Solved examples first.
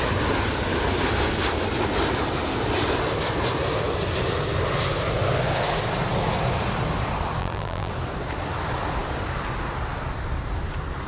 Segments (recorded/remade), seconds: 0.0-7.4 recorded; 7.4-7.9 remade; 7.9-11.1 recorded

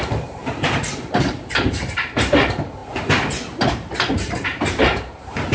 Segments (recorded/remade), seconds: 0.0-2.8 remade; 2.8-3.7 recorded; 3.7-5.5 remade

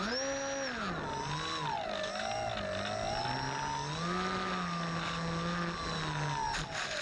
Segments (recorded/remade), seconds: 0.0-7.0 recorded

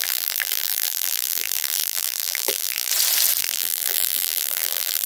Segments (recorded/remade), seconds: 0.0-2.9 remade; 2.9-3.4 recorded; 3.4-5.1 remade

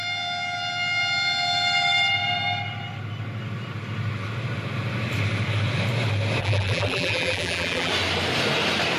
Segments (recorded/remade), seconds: 0.0-6.4 recorded; 6.4-7.9 remade; 7.9-9.0 recorded

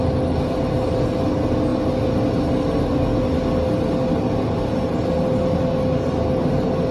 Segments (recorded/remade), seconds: 0.0-6.9 recorded

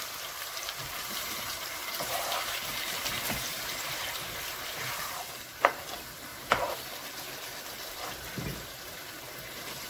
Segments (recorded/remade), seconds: 0.0-0.8 recorded; 0.8-5.7 remade; 5.7-9.9 recorded